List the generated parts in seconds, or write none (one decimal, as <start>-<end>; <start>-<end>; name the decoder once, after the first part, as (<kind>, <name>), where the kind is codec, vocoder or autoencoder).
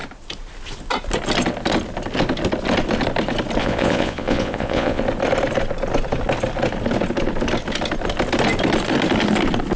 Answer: 3.6-5.0 (vocoder, Vocos)